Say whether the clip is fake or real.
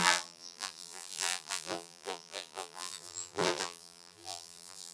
fake